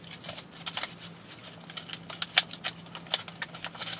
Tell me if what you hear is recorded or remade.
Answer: recorded